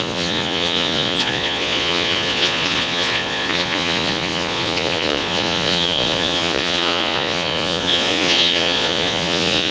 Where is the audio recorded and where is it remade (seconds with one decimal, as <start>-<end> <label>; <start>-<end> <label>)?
0.0-9.7 remade